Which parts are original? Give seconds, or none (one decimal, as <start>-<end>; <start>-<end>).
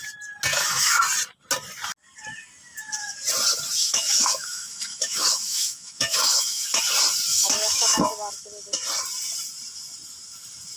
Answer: 0.0-0.5; 1.0-3.8; 6.8-7.3; 8.0-10.8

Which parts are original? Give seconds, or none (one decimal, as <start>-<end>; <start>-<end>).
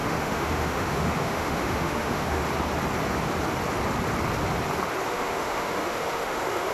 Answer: 2.4-5.1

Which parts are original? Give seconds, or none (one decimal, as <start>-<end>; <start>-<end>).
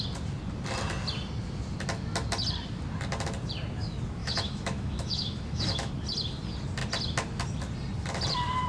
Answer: 0.0-4.2; 5.9-8.7